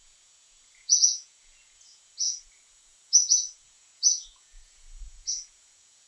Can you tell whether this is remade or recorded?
remade